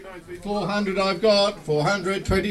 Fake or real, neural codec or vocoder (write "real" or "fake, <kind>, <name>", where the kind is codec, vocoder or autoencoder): real